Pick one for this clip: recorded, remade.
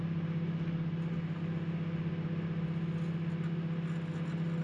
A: recorded